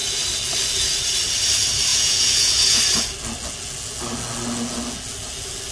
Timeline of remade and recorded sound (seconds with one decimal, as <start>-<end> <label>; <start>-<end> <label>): 0.0-1.9 recorded; 1.9-2.8 remade; 2.8-5.7 recorded